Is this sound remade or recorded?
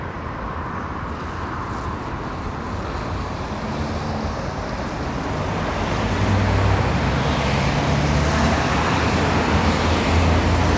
recorded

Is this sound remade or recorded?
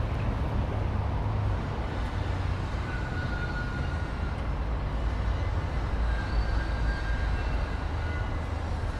recorded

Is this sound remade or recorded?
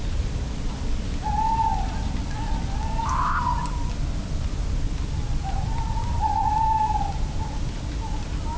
remade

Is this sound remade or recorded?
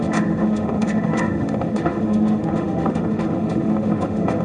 remade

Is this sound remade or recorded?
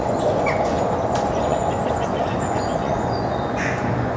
remade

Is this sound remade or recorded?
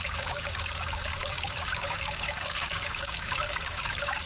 remade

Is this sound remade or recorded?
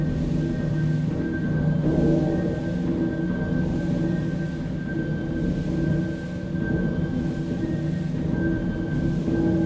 recorded